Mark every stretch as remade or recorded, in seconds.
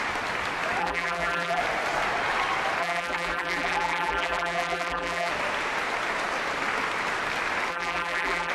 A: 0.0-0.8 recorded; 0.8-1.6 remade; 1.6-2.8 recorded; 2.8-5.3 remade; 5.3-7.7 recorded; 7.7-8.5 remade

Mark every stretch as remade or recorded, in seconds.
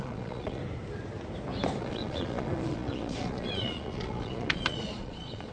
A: 0.0-0.6 remade; 0.6-1.8 recorded; 1.8-5.5 remade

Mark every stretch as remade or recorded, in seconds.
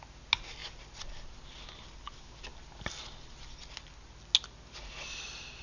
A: 0.0-5.6 recorded